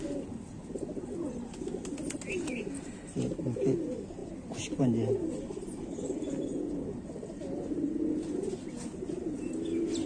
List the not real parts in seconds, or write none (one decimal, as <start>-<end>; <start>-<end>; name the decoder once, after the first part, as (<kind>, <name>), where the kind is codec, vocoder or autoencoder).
none